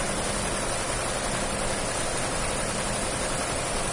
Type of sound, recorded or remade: recorded